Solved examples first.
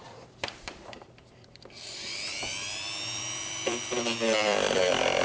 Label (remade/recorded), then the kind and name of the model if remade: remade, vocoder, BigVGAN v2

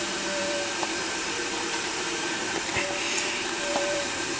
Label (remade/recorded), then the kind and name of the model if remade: remade, vocoder, BigVGAN v2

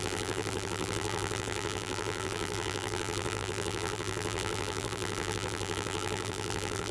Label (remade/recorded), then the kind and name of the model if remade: remade, vocoder, BigVGAN v2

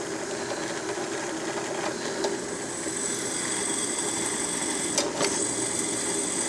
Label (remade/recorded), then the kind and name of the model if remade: recorded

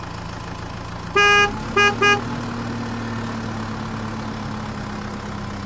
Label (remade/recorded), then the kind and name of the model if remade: recorded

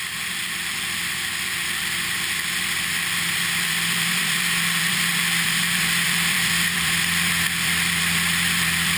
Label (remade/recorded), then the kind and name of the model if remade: remade, vocoder, BigVGAN v2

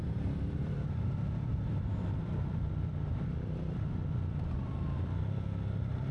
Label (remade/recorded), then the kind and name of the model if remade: remade, vocoder, BigVGAN v2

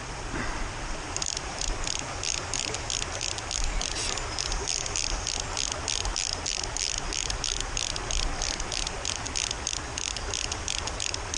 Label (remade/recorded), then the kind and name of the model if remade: recorded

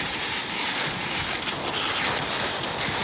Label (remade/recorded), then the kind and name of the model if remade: recorded